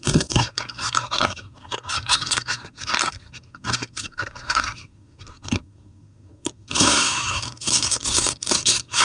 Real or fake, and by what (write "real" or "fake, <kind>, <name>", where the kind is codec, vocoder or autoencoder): fake, codec, SNAC